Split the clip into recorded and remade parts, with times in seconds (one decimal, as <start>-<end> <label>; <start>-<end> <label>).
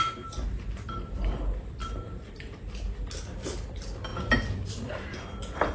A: 0.0-1.8 recorded; 1.8-2.4 remade; 2.4-5.7 recorded